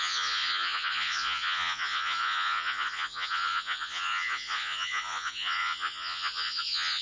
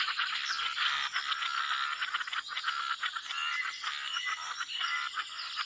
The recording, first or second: second